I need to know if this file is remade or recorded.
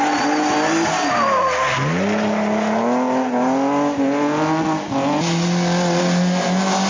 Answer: recorded